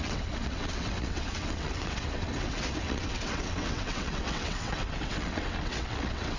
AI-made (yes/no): yes